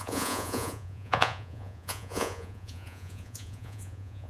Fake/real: fake